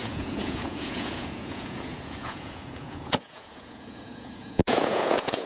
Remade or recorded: remade